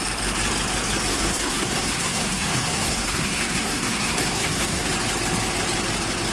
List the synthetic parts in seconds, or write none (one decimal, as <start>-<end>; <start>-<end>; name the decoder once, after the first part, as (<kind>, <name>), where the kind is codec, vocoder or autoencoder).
1.1-4.9 (codec, SNAC)